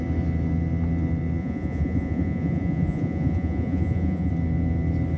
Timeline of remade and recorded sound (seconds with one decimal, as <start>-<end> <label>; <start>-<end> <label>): 0.0-1.4 recorded; 1.4-4.3 remade; 4.3-5.2 recorded